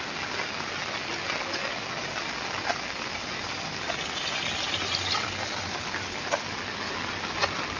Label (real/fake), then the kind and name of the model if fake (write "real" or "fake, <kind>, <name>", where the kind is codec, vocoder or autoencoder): real